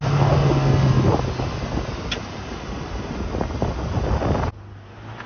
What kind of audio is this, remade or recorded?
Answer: recorded